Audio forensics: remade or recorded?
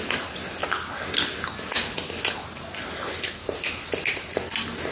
recorded